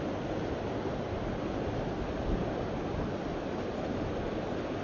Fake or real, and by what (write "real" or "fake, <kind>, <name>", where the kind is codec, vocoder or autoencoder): real